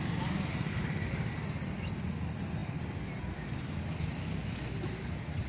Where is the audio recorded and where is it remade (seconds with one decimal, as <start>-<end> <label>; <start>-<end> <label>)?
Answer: 0.0-5.5 recorded